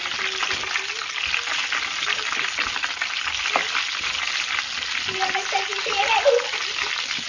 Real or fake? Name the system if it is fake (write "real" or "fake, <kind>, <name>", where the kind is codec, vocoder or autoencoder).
real